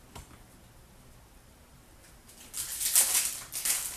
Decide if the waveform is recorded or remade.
recorded